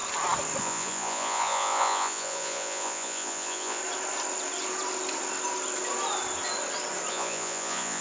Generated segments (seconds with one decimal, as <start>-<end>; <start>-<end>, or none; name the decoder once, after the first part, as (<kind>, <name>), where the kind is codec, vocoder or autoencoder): 0.6-3.8 (vocoder, Vocos); 7.1-8.0